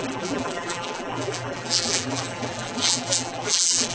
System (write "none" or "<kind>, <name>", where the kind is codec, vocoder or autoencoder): vocoder, BigVGAN v2